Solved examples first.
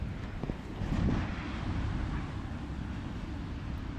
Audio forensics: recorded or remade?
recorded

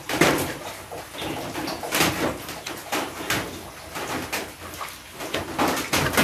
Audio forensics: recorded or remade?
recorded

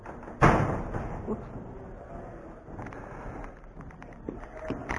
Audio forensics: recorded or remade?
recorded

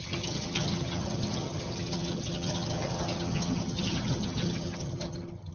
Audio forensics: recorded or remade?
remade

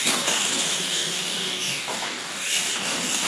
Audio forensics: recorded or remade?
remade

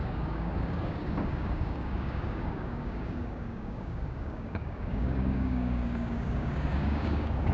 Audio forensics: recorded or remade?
remade